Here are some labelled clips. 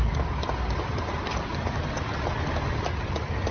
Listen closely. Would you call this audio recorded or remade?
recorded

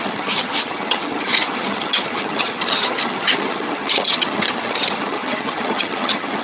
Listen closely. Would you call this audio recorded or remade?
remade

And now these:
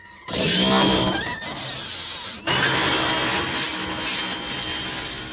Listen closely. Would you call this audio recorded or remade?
recorded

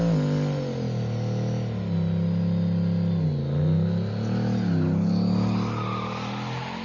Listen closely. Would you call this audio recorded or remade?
recorded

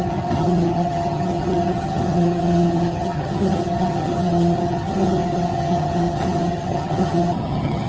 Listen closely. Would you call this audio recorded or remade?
remade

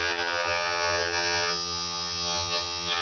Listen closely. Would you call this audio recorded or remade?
remade